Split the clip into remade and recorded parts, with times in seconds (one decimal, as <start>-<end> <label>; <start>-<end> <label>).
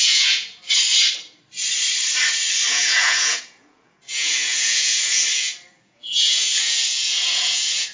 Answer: 0.0-0.6 remade; 0.6-2.7 recorded; 2.7-7.9 remade